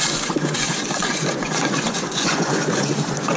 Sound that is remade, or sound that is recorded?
remade